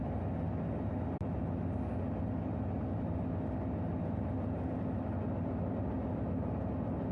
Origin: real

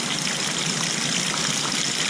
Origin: real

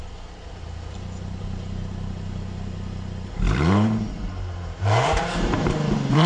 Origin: fake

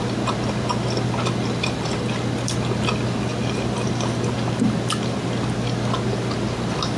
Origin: real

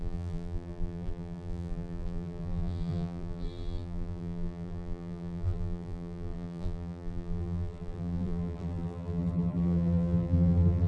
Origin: fake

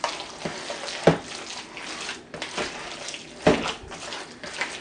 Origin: real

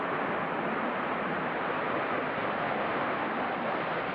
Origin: real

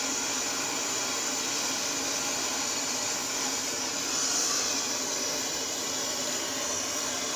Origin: real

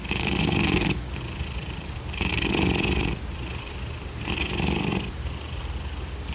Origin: fake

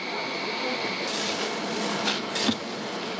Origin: real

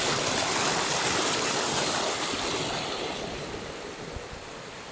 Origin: real